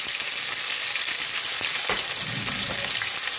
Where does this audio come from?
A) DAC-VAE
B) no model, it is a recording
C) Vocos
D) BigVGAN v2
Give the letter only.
B